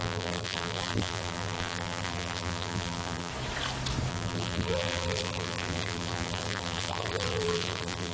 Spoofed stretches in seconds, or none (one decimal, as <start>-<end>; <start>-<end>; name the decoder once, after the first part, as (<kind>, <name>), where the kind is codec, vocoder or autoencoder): 0.0-3.3 (vocoder, BigVGAN v2); 4.1-8.1